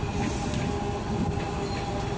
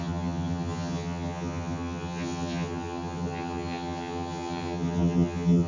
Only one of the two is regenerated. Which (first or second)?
second